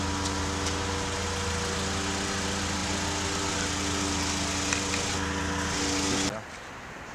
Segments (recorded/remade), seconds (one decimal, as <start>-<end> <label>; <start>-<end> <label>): 0.0-7.1 recorded